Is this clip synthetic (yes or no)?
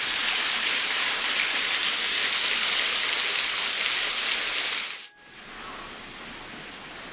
no